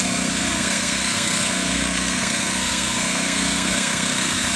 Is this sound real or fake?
fake